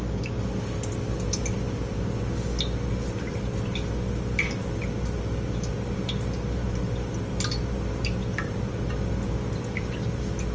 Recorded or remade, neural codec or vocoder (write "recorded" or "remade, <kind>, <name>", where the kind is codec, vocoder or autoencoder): recorded